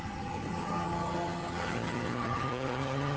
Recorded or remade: remade